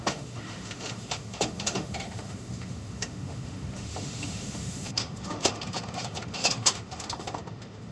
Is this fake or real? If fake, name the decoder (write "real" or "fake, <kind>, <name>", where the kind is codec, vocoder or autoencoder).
fake, autoencoder, DAC-VAE